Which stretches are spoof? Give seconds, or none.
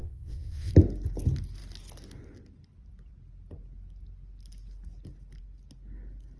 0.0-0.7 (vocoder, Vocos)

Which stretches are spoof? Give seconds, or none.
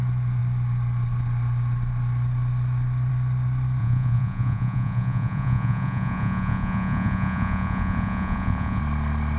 3.8-8.8 (vocoder, Vocos)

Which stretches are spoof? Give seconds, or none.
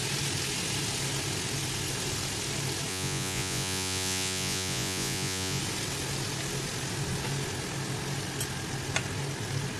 2.9-5.6 (vocoder, Vocos)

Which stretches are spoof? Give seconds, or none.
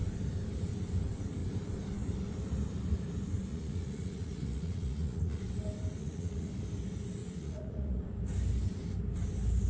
3.5-5.4 (vocoder, Vocos); 6.0-6.5; 7.2-8.0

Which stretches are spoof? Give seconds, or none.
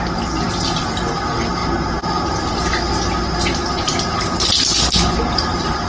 none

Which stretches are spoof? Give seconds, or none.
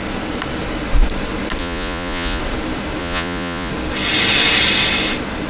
1.6-2.4 (vocoder, Vocos); 3.0-3.7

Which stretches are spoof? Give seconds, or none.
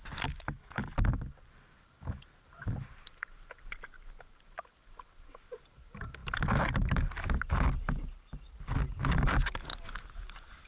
none